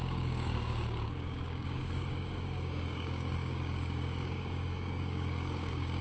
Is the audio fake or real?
fake